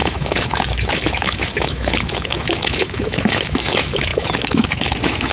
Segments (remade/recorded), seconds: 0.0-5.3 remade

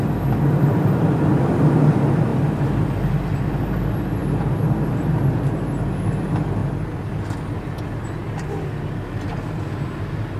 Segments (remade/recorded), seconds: 0.0-2.3 recorded; 2.3-2.9 remade; 2.9-10.4 recorded

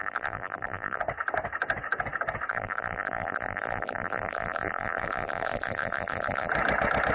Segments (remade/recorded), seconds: 0.0-1.0 remade; 1.0-2.5 recorded; 2.5-6.5 remade; 6.5-7.1 recorded

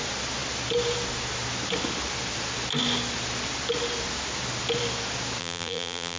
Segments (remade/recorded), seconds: 0.0-5.4 recorded; 5.4-6.2 remade

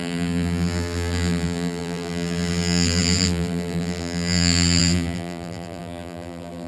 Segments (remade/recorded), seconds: 0.0-6.7 remade

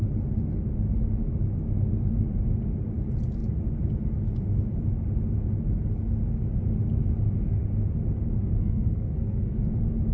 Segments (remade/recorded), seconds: 0.0-8.6 recorded; 8.6-9.6 remade; 9.6-10.1 recorded